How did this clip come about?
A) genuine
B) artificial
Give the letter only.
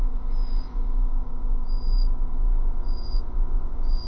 B